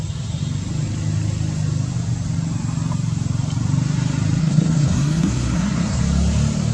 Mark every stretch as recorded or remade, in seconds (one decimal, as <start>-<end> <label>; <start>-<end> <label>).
0.0-4.4 recorded; 4.4-6.0 remade; 6.0-6.7 recorded